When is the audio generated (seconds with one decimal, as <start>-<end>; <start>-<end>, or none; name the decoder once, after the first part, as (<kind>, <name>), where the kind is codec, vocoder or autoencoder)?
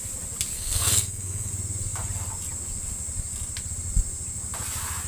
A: 0.5-1.5 (codec, SNAC)